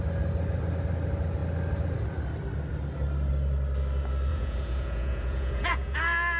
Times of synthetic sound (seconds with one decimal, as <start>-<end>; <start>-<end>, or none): 4.3-6.0